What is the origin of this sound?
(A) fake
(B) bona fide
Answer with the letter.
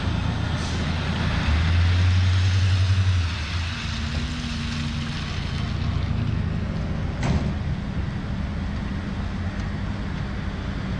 B